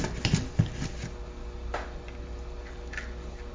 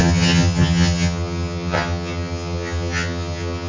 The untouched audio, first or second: first